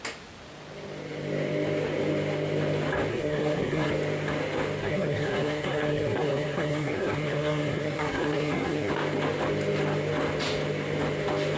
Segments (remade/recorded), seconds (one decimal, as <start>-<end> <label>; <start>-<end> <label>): 0.0-3.1 recorded; 3.1-3.9 remade; 3.9-4.8 recorded; 4.8-8.9 remade; 8.9-11.6 recorded